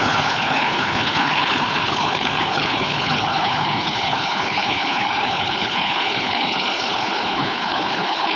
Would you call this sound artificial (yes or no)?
yes